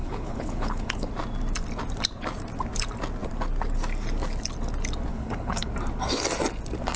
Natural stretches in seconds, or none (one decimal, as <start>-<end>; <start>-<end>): 1.1-5.1; 5.7-7.0